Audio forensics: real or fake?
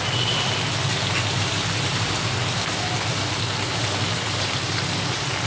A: real